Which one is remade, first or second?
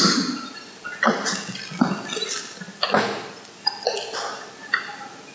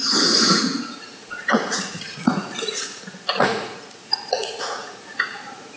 second